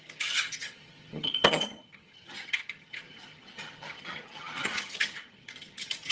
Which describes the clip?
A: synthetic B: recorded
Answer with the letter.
A